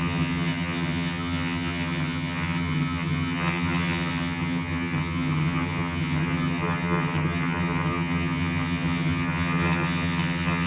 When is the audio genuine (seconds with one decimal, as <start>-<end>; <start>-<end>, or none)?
none